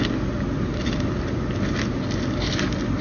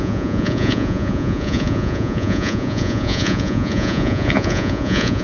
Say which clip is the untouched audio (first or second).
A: first